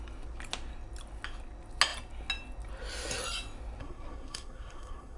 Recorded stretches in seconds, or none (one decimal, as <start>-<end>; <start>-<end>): 0.0-3.8